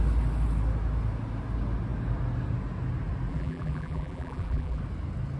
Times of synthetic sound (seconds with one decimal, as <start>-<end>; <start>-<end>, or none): 3.3-4.8